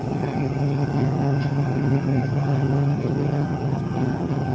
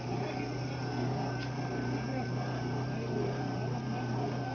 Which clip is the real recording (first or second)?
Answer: second